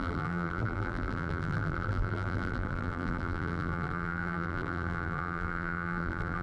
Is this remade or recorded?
remade